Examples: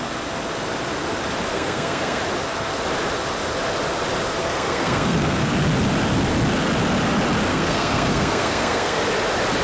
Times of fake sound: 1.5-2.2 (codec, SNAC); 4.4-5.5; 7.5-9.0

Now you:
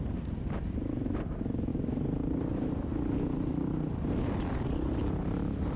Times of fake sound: none

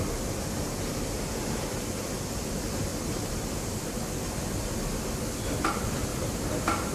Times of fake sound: 2.9-3.9 (vocoder, BigVGAN v2); 6.1-6.9

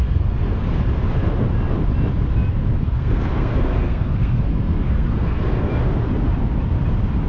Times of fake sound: 0.0-0.6 (codec, SNAC); 2.8-5.7

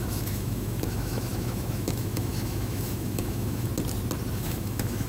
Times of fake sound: 0.0-3.7 (autoencoder, DAC-VAE); 4.3-5.1